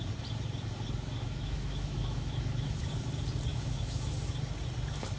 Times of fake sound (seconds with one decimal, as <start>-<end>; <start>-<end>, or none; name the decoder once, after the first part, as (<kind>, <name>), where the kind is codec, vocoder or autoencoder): 1.2-2.8 (autoencoder, DAC-VAE); 3.5-4.1